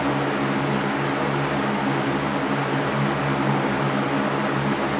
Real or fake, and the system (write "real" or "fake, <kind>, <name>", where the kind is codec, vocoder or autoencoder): real